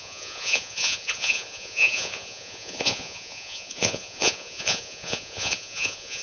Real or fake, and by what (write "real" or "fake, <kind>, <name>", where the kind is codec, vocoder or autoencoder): fake, vocoder, Vocos